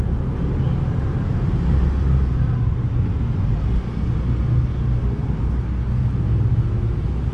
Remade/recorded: recorded